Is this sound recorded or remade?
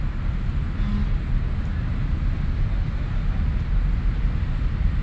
recorded